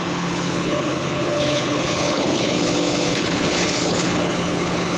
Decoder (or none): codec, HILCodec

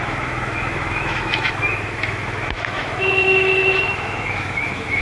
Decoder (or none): autoencoder, DAC-VAE